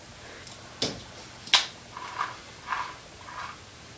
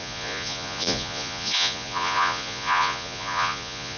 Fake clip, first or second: second